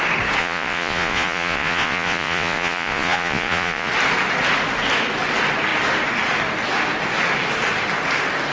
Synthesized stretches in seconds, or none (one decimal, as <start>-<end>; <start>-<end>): 0.4-3.9

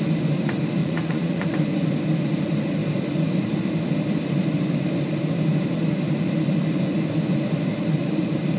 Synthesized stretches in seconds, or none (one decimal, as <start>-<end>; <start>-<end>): 0.8-1.5

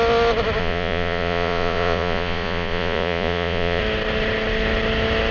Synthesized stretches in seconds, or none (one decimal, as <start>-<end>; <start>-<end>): 0.6-3.8

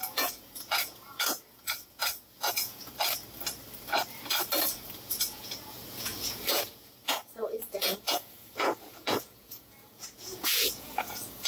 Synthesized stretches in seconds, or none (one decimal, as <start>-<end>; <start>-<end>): 0.0-2.9; 4.7-11.5

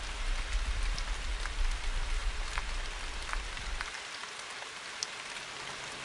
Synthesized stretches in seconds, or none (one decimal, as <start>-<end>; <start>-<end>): none

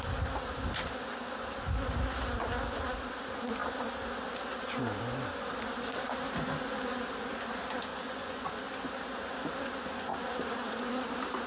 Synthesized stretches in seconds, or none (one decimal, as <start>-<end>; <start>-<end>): 7.9-8.5

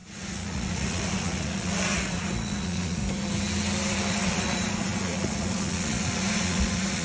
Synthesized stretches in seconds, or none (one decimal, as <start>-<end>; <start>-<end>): 0.0-3.0; 4.1-7.0